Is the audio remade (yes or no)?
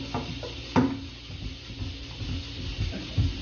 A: no